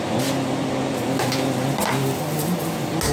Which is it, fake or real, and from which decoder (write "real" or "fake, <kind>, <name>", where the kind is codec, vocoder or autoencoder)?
real